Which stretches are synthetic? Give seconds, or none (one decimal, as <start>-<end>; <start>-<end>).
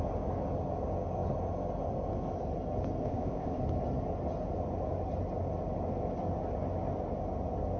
3.0-3.6